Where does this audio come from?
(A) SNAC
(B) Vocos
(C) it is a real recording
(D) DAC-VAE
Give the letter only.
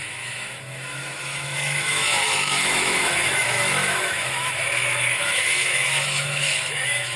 D